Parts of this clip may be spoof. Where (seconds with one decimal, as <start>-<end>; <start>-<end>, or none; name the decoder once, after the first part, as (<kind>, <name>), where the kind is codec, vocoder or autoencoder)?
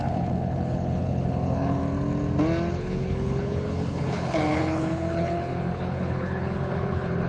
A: 0.0-1.8 (codec, HILCodec); 2.7-7.3